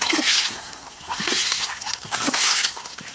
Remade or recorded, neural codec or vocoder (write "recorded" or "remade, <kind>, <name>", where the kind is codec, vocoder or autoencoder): remade, codec, SNAC